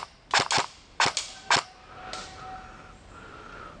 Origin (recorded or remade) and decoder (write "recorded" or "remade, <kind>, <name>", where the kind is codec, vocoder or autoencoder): recorded